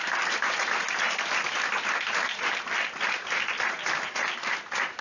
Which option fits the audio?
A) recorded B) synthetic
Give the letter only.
B